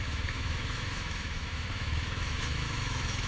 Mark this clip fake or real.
fake